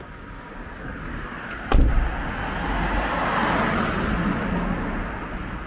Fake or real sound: real